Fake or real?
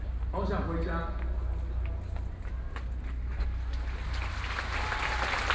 real